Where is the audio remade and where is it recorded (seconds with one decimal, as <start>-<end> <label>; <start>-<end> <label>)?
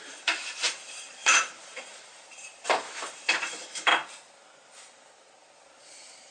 0.0-3.9 remade; 3.9-6.3 recorded